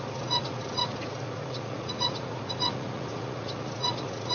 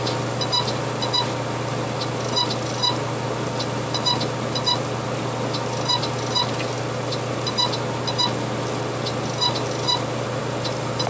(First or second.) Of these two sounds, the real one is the second